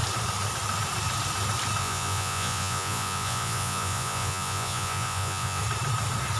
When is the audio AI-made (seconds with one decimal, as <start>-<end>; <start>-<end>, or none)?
1.8-5.6